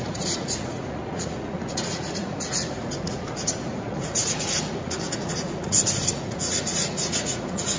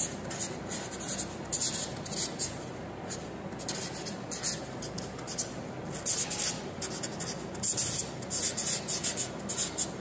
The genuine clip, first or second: second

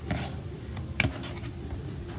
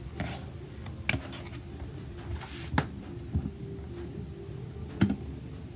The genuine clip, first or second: second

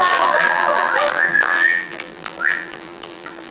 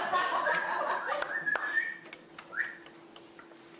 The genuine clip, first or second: second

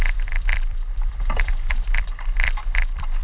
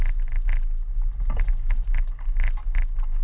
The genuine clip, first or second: second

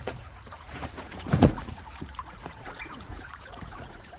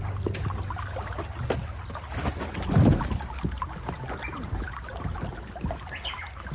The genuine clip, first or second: second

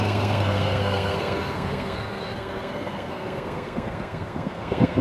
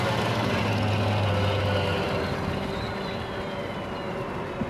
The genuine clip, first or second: second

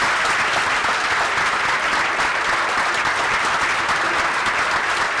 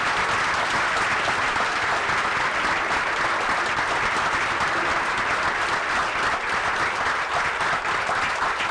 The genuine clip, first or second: first